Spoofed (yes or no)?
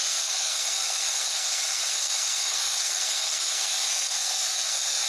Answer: yes